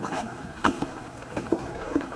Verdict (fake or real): fake